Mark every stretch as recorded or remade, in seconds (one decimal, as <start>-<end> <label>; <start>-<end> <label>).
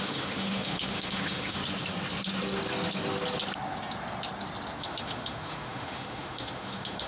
0.0-1.6 remade; 1.6-4.8 recorded; 4.8-7.1 remade